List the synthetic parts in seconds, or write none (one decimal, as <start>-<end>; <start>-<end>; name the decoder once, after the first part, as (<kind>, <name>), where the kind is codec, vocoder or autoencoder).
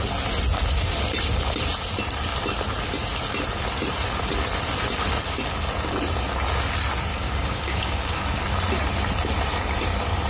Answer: 7.1-8.2 (codec, DAC)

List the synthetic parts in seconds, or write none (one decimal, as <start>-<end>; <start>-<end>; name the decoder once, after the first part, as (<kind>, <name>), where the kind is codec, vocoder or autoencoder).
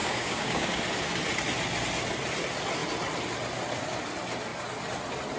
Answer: 0.0-0.8 (codec, DAC)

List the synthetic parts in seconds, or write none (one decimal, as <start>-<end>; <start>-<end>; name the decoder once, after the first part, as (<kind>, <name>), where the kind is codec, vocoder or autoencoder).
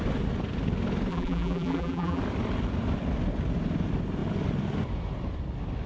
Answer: 1.1-2.2 (vocoder, BigVGAN v2)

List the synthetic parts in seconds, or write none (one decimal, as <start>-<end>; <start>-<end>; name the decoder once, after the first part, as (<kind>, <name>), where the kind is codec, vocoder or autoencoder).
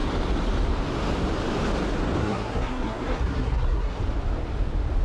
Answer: 2.2-4.0 (codec, SNAC)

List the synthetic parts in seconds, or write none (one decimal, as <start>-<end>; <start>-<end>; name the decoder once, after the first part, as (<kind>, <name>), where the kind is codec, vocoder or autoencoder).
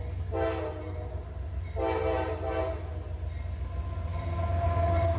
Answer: none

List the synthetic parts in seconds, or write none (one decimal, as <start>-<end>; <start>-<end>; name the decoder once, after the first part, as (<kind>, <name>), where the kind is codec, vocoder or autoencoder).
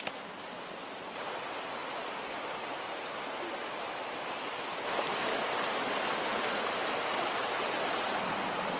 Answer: none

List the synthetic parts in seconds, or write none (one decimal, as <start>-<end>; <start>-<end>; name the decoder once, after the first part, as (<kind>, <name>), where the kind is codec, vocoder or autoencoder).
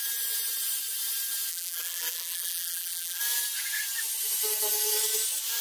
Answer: 1.5-3.2 (vocoder, BigVGAN v2)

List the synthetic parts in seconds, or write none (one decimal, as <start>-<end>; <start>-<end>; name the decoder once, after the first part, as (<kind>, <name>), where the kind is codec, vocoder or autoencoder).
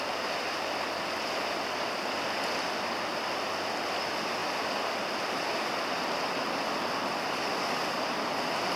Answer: 4.4-5.0 (vocoder, BigVGAN v2)